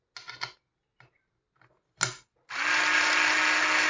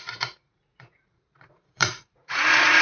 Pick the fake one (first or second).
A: second